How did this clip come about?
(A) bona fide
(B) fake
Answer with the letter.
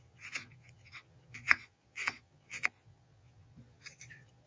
B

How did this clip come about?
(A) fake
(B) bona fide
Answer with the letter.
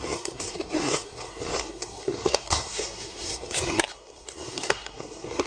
A